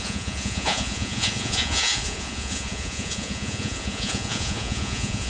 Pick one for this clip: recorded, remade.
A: remade